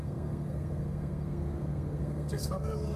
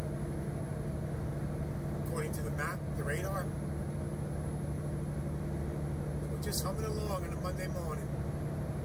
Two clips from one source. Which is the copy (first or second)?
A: first